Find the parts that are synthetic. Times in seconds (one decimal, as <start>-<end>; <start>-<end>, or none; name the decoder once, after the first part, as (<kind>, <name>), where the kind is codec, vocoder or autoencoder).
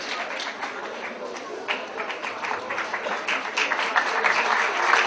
none